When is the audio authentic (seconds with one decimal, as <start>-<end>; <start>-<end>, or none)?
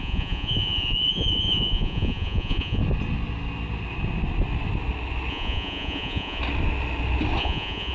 2.8-5.3; 6.4-7.4